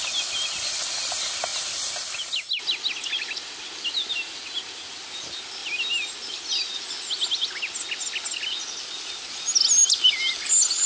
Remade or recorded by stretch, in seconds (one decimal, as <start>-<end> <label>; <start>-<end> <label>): 0.0-10.9 recorded